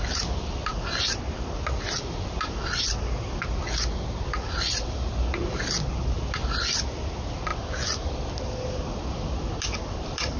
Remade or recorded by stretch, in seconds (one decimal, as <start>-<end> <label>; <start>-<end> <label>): 0.0-10.4 recorded